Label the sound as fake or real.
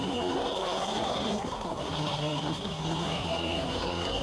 fake